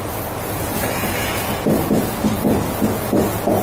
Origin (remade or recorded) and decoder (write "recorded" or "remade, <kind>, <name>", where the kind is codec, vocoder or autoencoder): recorded